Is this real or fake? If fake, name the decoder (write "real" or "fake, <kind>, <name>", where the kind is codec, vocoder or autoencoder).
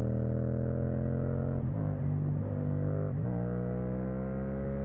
real